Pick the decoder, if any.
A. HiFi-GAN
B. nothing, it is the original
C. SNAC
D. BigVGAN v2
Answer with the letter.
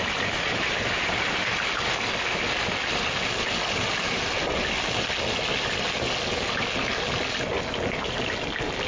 B